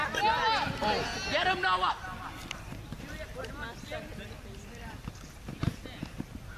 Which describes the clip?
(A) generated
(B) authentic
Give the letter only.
B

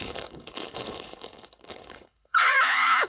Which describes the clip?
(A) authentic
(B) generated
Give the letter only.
B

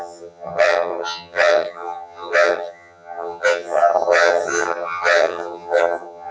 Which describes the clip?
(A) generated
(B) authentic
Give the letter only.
A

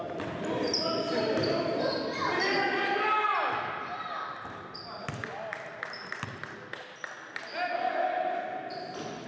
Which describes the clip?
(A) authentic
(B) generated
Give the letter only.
A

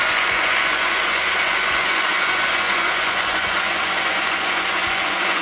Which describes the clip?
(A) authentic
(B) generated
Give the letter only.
B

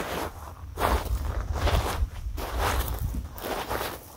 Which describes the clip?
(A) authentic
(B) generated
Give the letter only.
B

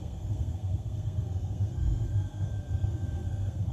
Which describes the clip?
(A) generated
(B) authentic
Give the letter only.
A